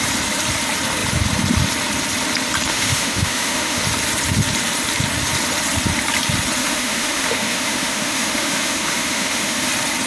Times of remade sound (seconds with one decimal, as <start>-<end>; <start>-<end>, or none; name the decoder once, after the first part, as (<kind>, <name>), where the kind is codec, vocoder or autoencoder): 2.7-3.8 (autoencoder, DAC-VAE); 6.6-9.7